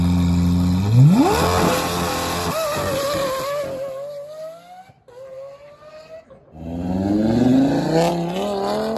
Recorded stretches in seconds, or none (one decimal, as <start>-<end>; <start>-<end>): 0.0-9.0